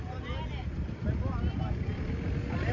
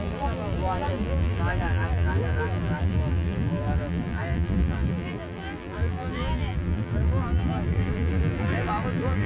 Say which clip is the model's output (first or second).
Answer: second